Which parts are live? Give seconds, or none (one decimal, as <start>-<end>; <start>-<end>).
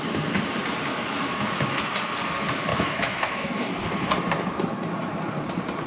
0.0-0.9; 1.8-2.7; 4.1-5.9